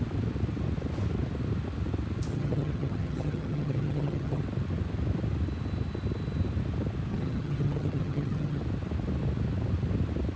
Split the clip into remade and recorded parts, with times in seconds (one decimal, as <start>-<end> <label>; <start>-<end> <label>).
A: 0.0-2.3 recorded; 2.3-4.4 remade; 4.4-7.1 recorded; 7.1-8.6 remade; 8.6-10.4 recorded